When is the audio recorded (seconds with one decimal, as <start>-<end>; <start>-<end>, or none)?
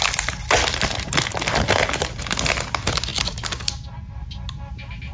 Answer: 0.0-5.1